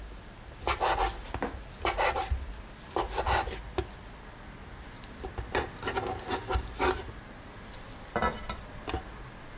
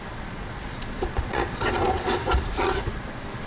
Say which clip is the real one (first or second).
first